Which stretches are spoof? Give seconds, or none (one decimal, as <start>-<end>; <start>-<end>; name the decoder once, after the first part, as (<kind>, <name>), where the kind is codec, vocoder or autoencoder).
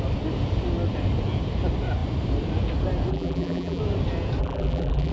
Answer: 3.1-3.8 (vocoder, BigVGAN v2); 4.4-5.1